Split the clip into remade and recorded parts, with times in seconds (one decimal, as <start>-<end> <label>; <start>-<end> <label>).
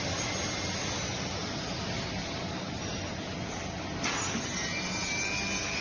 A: 0.0-5.8 recorded